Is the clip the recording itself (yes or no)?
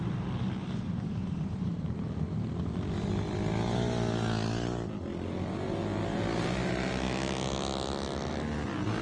yes